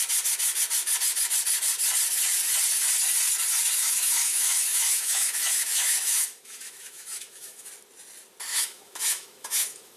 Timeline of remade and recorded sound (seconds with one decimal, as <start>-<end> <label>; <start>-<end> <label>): 0.0-3.8 recorded; 3.8-7.7 remade; 7.7-8.5 recorded; 8.5-10.0 remade